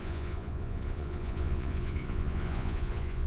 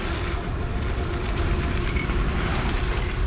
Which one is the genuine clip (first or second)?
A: second